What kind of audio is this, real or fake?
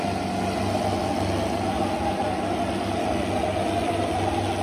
real